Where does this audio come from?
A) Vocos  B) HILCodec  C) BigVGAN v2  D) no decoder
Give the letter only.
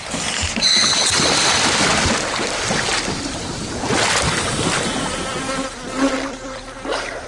D